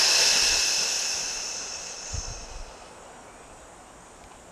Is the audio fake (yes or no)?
no